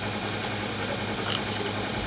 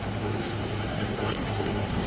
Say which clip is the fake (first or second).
second